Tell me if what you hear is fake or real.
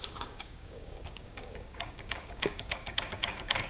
fake